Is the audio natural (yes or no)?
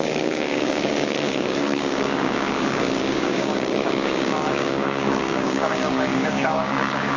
no